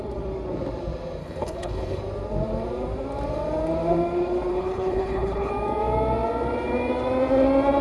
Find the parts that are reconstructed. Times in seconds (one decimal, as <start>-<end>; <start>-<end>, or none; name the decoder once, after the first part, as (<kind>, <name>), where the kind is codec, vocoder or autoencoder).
1.2-2.0 (codec, HILCodec); 4.5-5.5